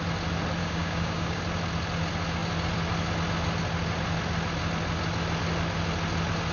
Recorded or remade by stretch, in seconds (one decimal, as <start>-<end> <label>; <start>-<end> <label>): 0.0-0.6 recorded; 0.6-1.4 remade; 1.4-6.5 recorded